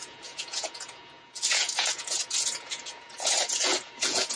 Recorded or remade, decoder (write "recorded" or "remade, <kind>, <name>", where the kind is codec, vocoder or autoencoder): remade, vocoder, Vocos